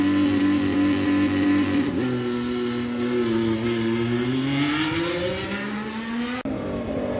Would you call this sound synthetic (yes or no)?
no